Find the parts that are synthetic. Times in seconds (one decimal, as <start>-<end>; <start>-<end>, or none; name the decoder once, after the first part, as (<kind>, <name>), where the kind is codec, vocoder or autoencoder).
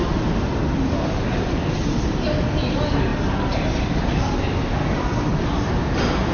none